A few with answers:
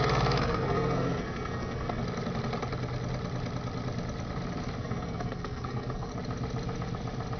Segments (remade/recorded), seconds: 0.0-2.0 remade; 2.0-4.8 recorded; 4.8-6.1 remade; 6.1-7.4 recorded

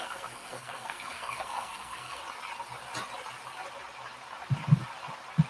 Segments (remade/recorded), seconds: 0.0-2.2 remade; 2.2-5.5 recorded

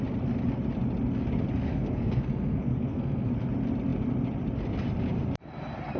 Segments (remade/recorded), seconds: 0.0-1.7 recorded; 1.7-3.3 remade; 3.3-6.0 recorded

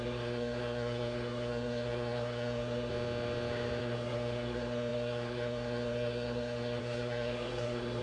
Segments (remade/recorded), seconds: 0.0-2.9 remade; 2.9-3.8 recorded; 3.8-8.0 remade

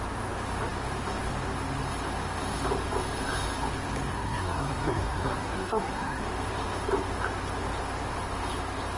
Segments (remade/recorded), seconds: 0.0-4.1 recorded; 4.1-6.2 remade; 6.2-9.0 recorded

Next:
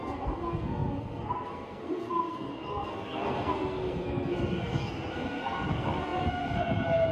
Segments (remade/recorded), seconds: 0.0-7.1 remade